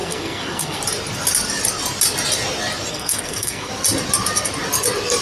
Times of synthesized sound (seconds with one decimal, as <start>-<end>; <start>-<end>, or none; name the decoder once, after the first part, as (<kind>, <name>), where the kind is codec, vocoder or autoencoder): 0.0-0.8 (codec, SNAC); 2.9-3.7